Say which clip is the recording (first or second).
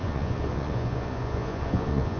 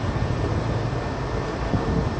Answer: second